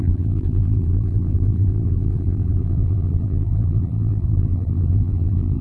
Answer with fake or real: fake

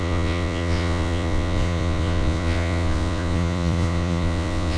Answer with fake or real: fake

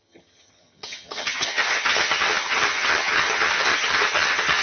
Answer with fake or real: fake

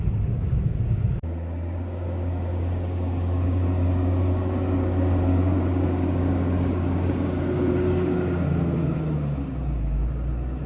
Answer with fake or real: fake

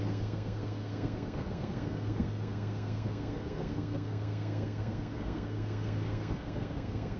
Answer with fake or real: fake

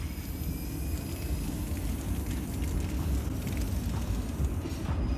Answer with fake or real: real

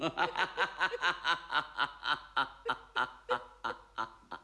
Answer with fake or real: real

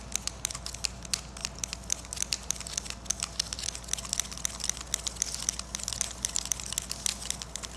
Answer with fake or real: real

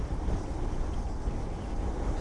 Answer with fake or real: real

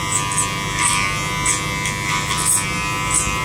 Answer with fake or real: real